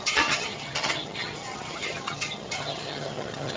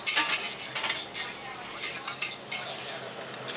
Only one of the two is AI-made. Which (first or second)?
first